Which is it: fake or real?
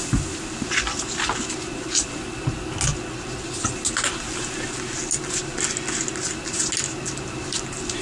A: real